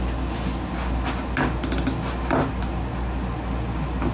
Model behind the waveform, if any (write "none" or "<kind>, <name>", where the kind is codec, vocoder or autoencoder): none